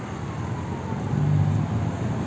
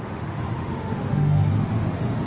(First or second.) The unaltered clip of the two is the first